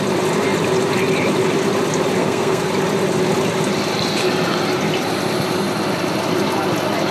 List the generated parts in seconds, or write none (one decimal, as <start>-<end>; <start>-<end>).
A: 2.2-2.7